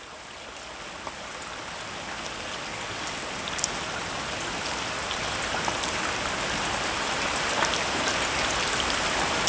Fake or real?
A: real